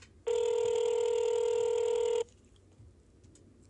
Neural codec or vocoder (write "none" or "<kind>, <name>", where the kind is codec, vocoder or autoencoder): none